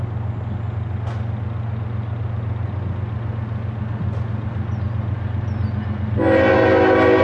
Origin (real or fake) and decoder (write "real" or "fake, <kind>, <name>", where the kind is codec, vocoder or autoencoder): real